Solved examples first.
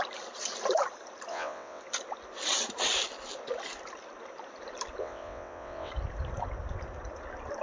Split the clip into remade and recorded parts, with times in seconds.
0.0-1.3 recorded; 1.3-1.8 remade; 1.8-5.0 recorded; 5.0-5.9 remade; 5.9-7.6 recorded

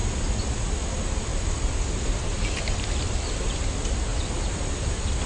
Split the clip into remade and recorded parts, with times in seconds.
0.0-0.9 recorded; 0.9-1.3 remade; 1.3-3.3 recorded; 3.3-4.1 remade; 4.1-4.7 recorded; 4.7-5.3 remade

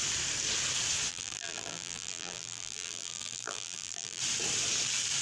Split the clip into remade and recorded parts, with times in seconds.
0.0-1.1 recorded; 1.1-4.2 remade; 4.2-5.2 recorded

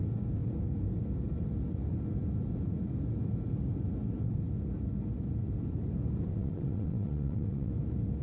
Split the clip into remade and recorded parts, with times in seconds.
0.0-6.3 recorded; 6.3-7.7 remade; 7.7-8.2 recorded

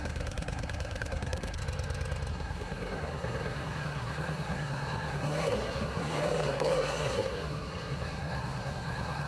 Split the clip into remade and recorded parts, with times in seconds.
0.0-1.6 remade; 1.6-2.3 recorded; 2.3-9.3 remade